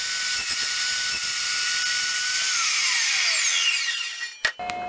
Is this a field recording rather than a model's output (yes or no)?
yes